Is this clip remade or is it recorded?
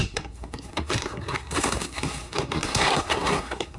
remade